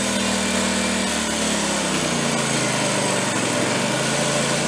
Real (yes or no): yes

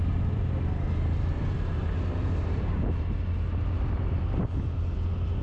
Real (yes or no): yes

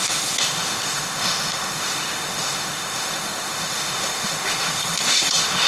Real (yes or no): no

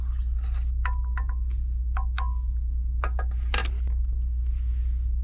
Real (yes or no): yes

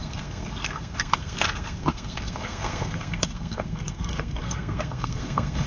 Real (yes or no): no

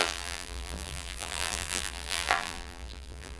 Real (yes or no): no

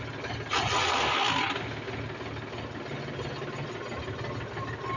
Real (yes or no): yes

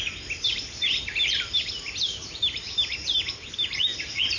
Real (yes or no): yes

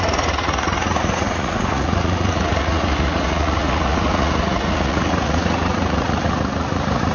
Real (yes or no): no